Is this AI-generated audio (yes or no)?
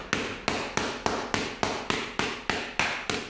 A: no